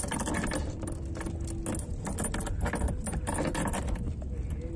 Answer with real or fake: real